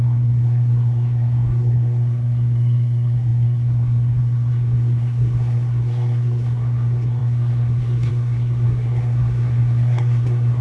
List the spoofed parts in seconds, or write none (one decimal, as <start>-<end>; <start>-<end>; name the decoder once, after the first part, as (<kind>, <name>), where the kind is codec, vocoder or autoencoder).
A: 0.0-10.6 (codec, SNAC)